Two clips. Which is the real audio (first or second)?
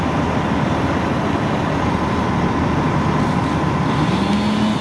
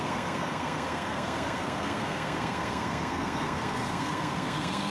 first